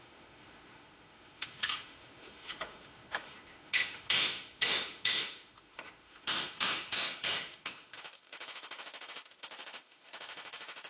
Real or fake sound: fake